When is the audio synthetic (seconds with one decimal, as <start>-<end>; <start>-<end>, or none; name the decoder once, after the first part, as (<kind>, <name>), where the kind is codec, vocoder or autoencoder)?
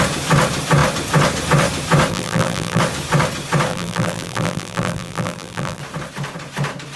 2.1-2.8 (vocoder, BigVGAN v2); 3.7-5.8